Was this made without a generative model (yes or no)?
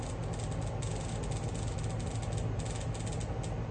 yes